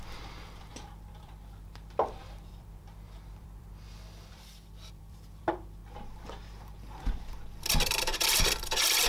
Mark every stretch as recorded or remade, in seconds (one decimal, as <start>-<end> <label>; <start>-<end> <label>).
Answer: 0.0-5.8 remade; 5.8-6.7 recorded; 6.7-9.1 remade